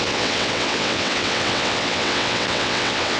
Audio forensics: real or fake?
fake